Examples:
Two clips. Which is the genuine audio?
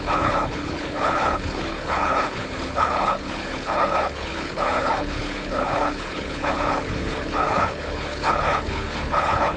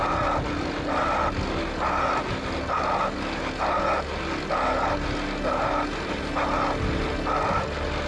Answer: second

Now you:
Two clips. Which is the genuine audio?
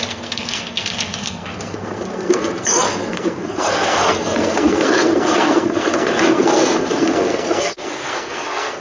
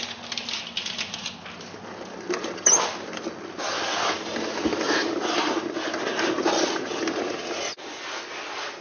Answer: second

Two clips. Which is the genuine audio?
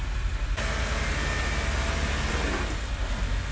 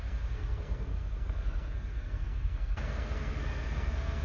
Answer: first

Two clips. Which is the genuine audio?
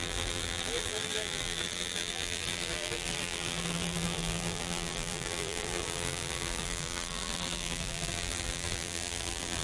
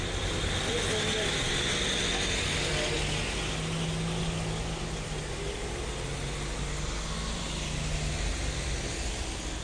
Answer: second